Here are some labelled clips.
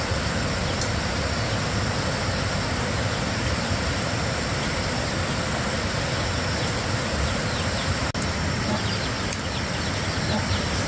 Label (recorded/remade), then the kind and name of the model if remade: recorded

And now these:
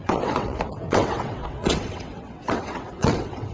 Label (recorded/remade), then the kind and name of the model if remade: remade, vocoder, WaveNeXt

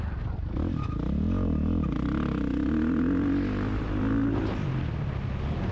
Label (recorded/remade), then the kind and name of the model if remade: recorded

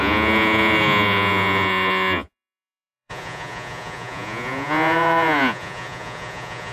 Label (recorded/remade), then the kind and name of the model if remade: remade, vocoder, Vocos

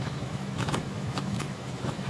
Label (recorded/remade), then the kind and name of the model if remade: remade, autoencoder, DAC-VAE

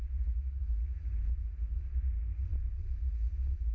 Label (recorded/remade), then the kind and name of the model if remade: recorded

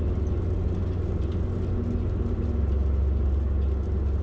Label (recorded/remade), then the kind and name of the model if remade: recorded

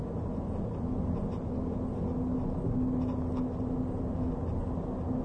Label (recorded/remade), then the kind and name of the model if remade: recorded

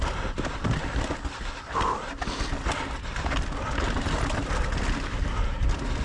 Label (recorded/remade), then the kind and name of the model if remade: recorded